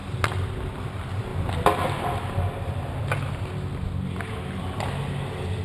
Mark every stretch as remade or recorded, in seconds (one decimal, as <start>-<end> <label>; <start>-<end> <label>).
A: 0.0-5.6 recorded